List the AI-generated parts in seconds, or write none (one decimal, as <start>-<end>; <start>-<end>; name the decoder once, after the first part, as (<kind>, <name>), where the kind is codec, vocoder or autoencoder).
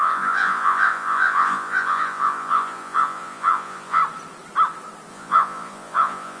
0.0-4.0 (vocoder, Vocos); 5.1-6.4